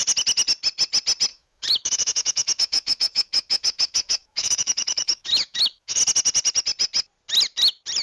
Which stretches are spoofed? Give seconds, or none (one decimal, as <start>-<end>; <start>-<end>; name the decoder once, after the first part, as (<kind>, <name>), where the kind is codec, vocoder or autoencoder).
1.3-6.0 (autoencoder, DAC-VAE)